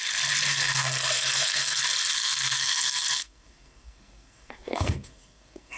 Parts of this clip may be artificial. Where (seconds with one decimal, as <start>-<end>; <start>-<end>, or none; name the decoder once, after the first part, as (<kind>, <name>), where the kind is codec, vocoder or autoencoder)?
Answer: 0.5-1.8 (codec, SNAC); 2.2-5.8